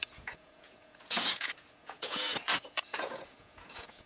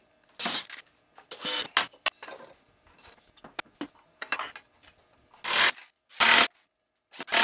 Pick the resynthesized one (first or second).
first